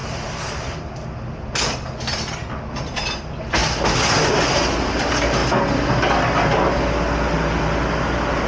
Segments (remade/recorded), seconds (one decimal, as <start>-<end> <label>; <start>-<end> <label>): 0.0-8.5 recorded